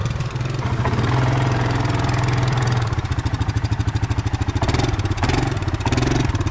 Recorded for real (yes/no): no